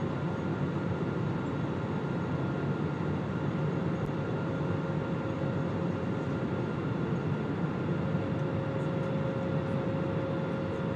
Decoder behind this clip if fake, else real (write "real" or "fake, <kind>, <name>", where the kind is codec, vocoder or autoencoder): real